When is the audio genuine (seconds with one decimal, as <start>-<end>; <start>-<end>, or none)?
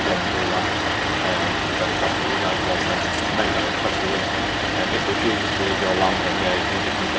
0.0-7.2